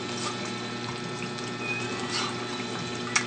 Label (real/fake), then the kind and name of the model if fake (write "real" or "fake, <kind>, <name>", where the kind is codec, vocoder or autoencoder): real